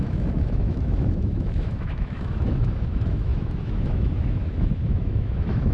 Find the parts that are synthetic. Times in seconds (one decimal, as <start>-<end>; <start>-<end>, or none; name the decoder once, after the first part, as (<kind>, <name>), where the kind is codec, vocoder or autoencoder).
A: 0.0-5.7 (autoencoder, DAC-VAE)